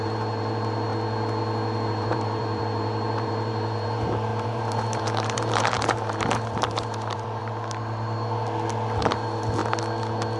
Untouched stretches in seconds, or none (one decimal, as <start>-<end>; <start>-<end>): 0.9-1.9; 7.4-9.0; 9.6-10.4